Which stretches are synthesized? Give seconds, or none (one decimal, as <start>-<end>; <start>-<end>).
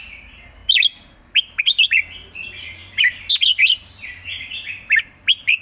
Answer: 0.0-0.6; 1.6-5.6